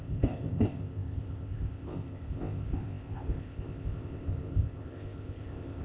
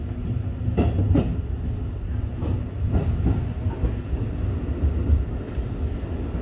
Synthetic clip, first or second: first